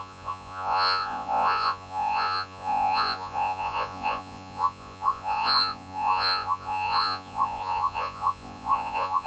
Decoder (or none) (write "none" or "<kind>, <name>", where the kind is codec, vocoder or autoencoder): vocoder, Vocos